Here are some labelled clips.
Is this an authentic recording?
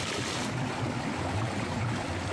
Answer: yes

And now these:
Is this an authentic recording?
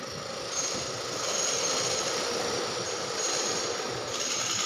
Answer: yes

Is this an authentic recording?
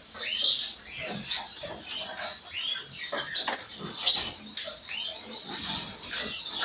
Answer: yes